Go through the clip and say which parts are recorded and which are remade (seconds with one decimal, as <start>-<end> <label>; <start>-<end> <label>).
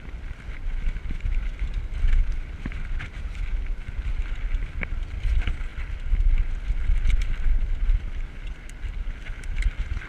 0.0-10.1 recorded